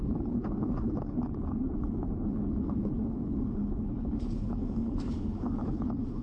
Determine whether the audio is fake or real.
fake